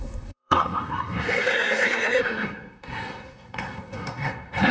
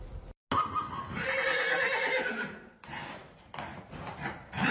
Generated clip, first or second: first